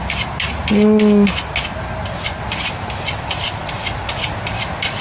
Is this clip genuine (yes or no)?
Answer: yes